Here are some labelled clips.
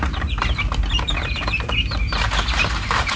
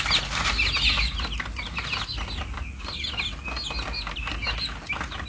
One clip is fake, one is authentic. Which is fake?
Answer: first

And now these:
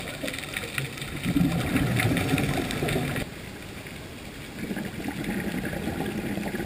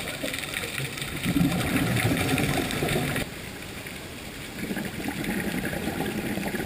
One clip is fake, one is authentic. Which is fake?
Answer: second